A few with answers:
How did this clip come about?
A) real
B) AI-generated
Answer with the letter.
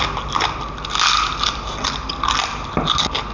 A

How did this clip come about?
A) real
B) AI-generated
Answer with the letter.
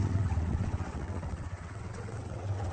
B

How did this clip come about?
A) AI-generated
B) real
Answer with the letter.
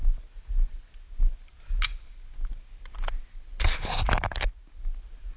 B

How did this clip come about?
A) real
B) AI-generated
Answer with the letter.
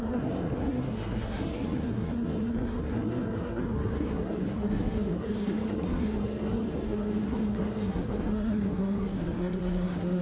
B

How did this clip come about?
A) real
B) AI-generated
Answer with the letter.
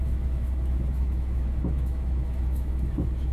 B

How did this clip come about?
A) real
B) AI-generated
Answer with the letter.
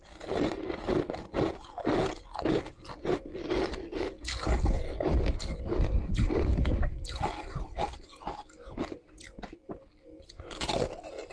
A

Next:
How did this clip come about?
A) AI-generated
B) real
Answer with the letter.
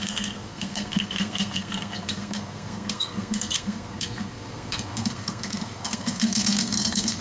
A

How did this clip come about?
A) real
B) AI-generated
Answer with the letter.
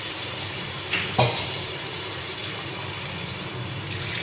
A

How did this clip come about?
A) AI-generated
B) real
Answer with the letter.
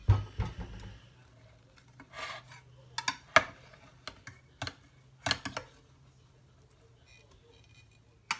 B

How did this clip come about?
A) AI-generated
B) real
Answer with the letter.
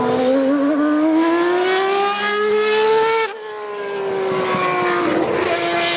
B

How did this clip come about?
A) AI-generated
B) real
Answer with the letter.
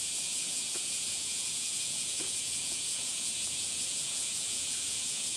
A